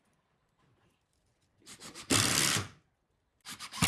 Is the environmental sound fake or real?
real